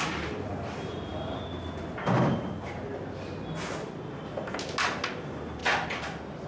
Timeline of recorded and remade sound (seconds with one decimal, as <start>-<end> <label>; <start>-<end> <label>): 0.0-6.5 recorded